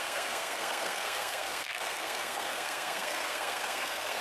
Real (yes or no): no